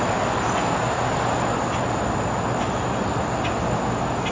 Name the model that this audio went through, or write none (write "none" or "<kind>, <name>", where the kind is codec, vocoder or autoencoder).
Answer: none